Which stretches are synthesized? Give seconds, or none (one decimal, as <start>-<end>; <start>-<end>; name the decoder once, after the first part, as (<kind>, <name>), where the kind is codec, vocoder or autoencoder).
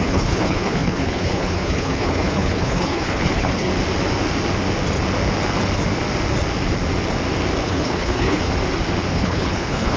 0.0-3.7 (codec, HILCodec); 7.6-8.5; 9.1-10.0